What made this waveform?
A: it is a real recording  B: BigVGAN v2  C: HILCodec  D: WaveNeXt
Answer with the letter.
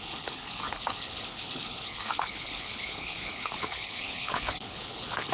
C